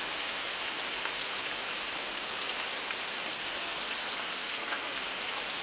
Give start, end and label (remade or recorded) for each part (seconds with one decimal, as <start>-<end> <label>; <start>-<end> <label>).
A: 0.0-3.3 recorded; 3.3-5.0 remade; 5.0-5.6 recorded